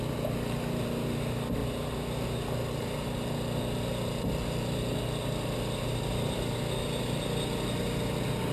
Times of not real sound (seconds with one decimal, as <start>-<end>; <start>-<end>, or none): none